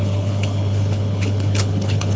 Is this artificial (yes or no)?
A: yes